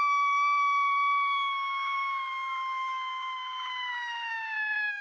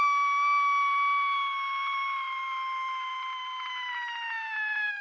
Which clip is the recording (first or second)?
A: second